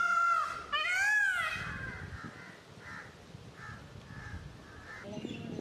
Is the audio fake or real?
real